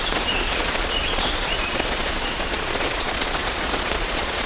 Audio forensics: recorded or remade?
remade